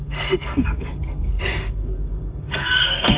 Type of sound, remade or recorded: remade